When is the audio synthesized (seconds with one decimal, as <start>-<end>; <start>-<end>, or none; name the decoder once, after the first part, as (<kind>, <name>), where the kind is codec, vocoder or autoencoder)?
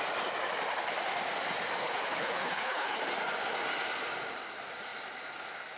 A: 1.8-3.0 (codec, HILCodec)